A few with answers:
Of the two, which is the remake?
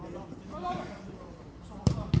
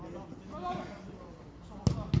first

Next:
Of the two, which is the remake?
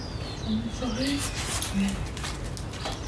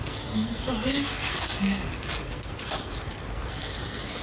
second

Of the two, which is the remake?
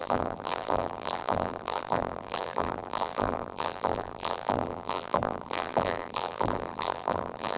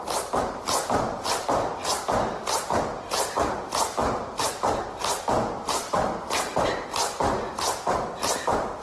first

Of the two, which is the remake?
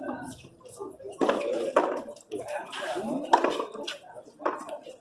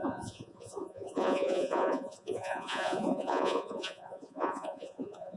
second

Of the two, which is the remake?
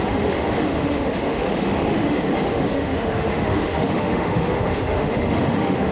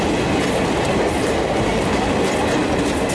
first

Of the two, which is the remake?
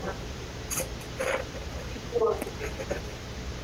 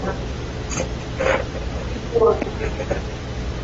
first